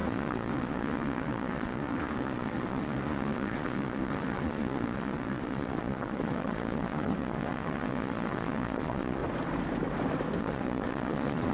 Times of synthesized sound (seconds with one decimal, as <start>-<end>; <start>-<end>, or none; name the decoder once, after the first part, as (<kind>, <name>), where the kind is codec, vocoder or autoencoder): 0.0-9.2 (vocoder, Vocos); 10.4-11.5